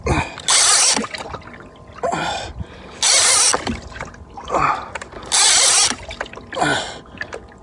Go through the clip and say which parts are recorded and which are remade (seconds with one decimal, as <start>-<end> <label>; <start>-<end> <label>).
0.0-7.6 recorded